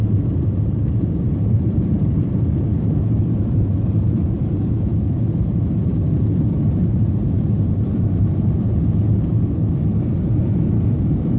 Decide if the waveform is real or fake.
fake